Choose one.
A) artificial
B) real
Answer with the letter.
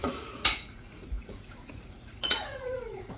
A